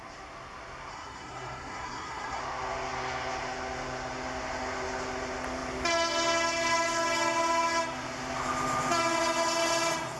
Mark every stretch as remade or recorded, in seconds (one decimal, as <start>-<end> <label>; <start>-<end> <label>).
0.0-0.9 recorded; 0.9-2.4 remade; 2.4-10.2 recorded